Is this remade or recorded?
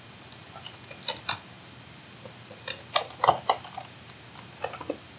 recorded